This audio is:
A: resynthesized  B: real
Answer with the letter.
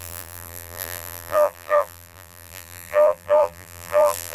A